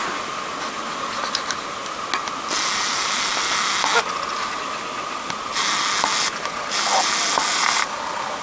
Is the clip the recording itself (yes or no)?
yes